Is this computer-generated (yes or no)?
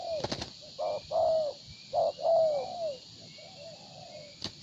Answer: no